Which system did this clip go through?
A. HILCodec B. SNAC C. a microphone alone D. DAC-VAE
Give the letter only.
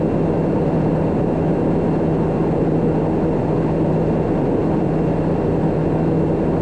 C